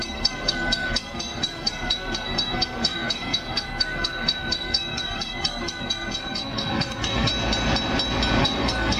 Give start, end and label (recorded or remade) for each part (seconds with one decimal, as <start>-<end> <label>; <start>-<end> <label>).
0.0-7.3 remade; 7.3-8.4 recorded; 8.4-9.0 remade